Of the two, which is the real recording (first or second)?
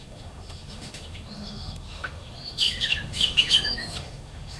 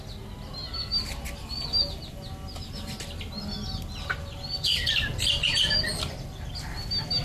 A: second